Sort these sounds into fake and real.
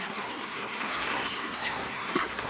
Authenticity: fake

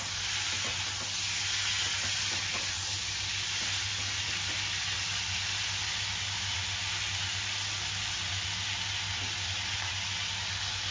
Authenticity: real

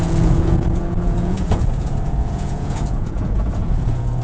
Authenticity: fake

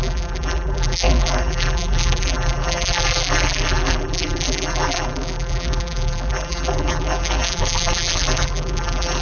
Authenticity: fake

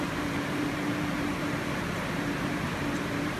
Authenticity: fake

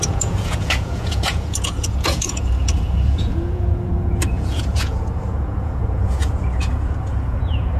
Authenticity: fake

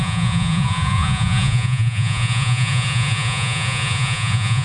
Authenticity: fake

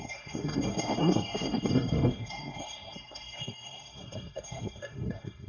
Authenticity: fake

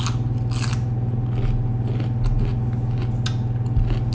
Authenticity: real